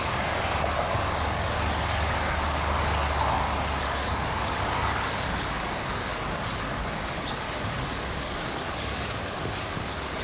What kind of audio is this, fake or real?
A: fake